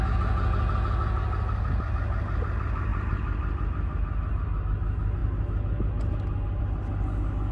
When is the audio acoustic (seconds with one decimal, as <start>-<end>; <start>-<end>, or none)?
0.0-7.5